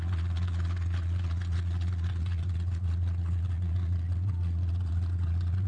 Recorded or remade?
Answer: remade